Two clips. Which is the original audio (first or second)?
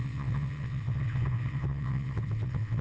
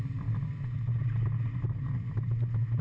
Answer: second